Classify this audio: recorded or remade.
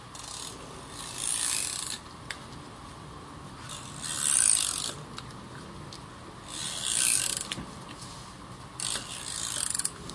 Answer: recorded